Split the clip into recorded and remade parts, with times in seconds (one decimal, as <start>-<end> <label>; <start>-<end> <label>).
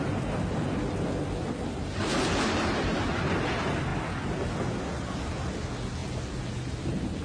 0.0-7.2 recorded